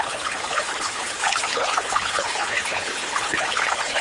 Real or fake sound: fake